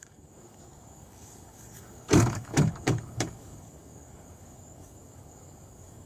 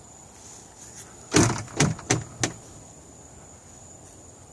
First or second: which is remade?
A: first